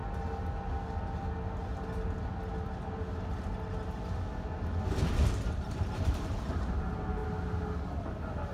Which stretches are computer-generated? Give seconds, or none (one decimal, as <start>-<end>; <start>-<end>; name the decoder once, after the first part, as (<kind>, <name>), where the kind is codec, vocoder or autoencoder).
5.1-7.2 (vocoder, BigVGAN v2); 8.1-8.5